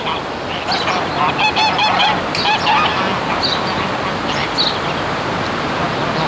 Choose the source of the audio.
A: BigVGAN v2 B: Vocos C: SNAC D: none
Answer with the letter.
D